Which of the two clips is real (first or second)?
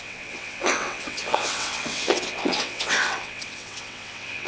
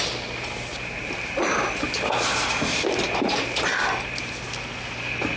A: second